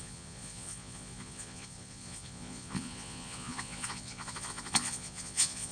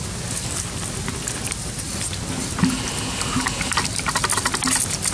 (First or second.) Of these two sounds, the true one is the second